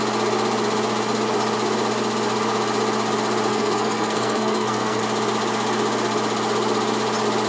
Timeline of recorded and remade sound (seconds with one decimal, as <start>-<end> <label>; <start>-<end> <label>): 0.0-3.5 recorded; 3.5-5.0 remade; 5.0-7.5 recorded